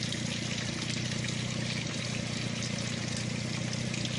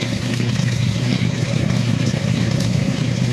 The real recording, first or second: first